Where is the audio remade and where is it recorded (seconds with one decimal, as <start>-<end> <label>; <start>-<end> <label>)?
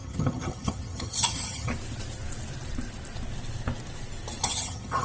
0.0-1.7 remade; 1.7-4.4 recorded; 4.4-5.0 remade